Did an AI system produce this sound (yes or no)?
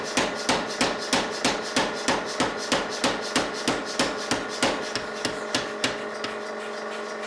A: no